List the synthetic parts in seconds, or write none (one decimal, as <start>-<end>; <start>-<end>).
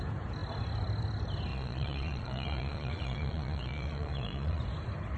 1.5-4.6